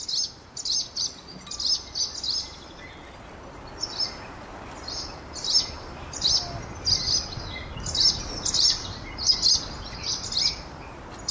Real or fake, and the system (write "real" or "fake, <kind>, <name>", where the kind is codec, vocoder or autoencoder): real